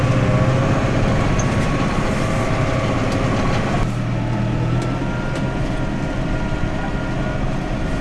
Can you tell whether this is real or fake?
real